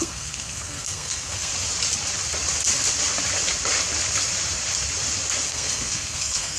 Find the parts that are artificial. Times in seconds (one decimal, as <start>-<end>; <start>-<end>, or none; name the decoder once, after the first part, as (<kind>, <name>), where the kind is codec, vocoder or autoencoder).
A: 0.0-1.5 (codec, SNAC); 5.5-6.6